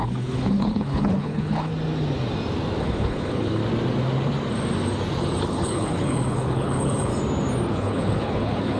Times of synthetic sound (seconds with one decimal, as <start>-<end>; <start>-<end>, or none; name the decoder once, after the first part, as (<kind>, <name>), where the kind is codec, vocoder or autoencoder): 0.0-1.7 (codec, HILCodec); 2.8-3.6; 5.4-7.1; 7.7-8.8